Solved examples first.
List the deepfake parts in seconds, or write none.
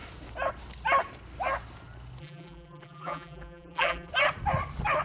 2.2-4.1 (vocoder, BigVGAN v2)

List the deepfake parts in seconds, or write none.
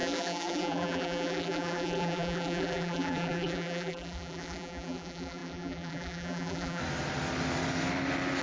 0.0-6.8 (vocoder, BigVGAN v2)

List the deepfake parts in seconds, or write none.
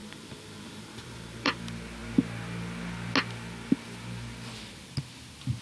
0.0-1.6 (vocoder, BigVGAN v2)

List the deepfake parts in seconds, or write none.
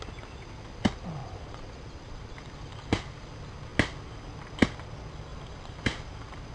1.2-2.5 (vocoder, BigVGAN v2); 5.3-6.5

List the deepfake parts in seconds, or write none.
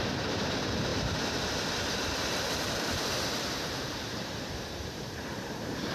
0.0-5.9 (vocoder, BigVGAN v2)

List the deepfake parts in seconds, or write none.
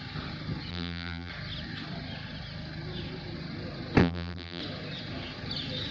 0.7-1.3 (vocoder, BigVGAN v2); 4.0-4.6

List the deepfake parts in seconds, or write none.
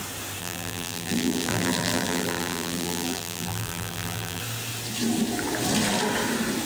0.4-4.4 (vocoder, BigVGAN v2)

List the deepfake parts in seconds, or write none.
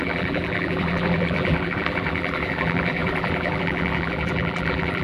0.0-5.0 (vocoder, BigVGAN v2)